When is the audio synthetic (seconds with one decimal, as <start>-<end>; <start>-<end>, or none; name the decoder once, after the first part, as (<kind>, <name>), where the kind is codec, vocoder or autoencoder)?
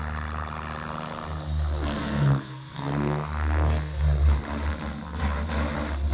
2.0-4.0 (codec, SNAC)